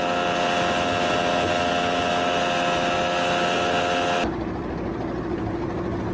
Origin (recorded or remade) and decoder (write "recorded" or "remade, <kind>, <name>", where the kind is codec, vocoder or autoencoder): recorded